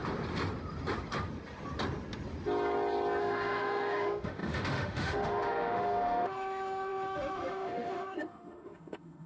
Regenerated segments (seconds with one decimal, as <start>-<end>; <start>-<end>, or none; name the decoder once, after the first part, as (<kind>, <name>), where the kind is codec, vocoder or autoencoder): 3.2-9.3 (autoencoder, DAC-VAE)